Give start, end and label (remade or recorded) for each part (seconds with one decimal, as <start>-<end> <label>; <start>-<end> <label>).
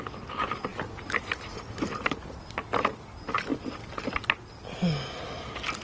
0.0-5.8 recorded